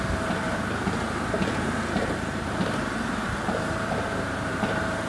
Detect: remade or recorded remade